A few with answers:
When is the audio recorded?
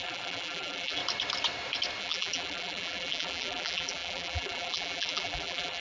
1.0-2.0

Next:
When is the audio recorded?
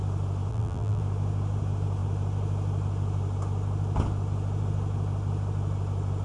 0.0-0.5; 1.0-6.2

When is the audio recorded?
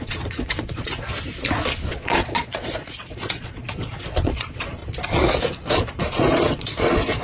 0.9-1.9; 4.8-5.8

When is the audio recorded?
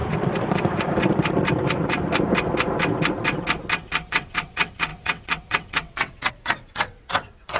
0.0-4.1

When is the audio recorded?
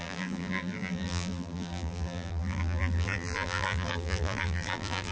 none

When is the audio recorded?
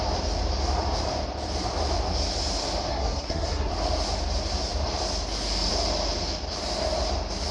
0.0-2.9; 3.7-7.5